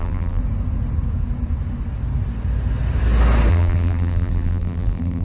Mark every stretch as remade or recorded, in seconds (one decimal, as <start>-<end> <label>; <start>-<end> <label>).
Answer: 0.0-0.4 remade; 0.4-3.5 recorded; 3.5-5.2 remade